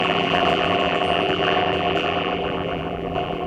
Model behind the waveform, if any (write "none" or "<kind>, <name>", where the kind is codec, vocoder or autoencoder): vocoder, BigVGAN v2